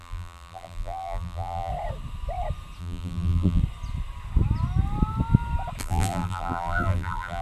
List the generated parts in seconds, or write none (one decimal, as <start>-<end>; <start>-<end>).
0.0-1.7; 2.8-3.6; 5.8-7.4